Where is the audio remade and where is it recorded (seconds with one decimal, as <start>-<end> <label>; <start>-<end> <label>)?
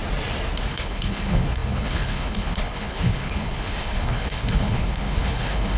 0.0-0.7 recorded; 0.7-5.8 remade